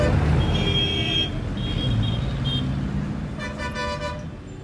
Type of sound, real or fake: real